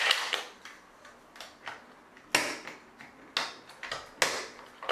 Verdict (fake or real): real